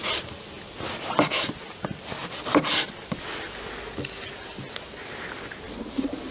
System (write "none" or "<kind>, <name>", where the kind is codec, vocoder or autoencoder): none